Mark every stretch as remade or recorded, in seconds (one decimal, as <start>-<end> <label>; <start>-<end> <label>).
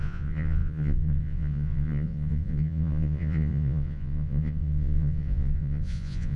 0.0-6.4 remade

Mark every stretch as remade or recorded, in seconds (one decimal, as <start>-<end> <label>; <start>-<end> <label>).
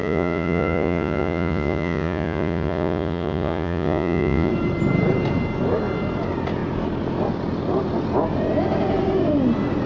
0.0-4.5 remade; 4.5-9.9 recorded